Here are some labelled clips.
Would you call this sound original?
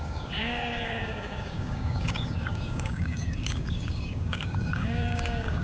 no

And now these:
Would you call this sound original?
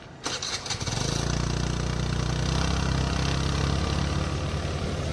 yes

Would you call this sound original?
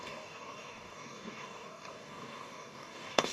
no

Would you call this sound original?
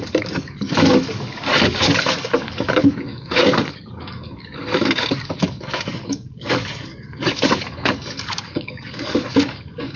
no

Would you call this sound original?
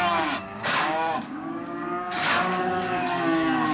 no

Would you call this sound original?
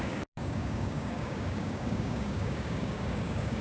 no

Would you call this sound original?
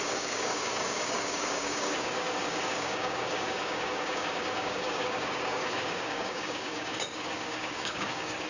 no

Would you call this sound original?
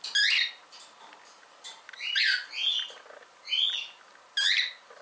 yes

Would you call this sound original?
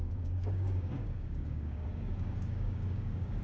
no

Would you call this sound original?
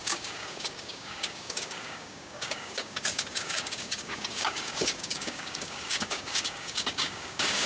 no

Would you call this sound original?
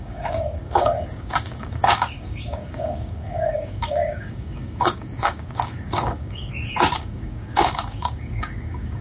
no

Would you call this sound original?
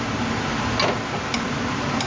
yes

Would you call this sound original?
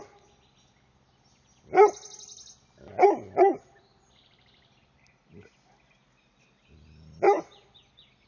yes